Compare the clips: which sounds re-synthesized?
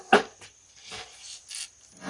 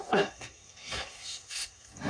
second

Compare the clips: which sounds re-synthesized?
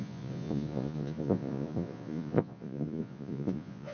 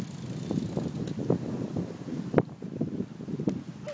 first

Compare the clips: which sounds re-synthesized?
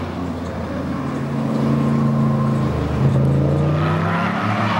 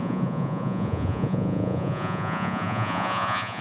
second